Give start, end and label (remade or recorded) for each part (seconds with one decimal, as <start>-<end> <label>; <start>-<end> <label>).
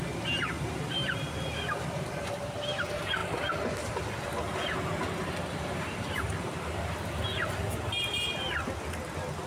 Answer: 0.0-9.5 recorded